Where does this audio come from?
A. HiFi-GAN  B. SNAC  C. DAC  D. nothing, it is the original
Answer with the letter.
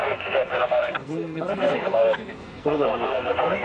B